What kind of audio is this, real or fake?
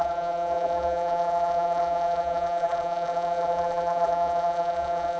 fake